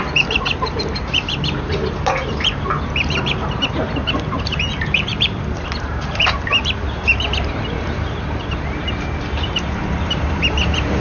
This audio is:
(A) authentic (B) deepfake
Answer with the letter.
B